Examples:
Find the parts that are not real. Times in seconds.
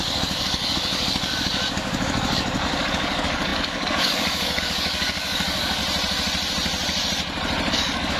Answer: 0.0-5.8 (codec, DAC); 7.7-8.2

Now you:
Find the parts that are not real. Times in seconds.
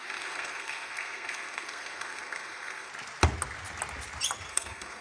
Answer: 0.0-2.9 (codec, SNAC); 4.5-5.0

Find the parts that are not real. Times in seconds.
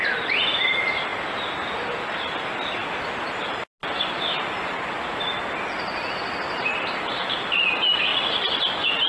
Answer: none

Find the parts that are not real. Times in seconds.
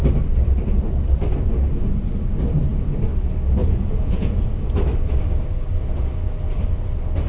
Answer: 3.6-4.4 (vocoder, Vocos)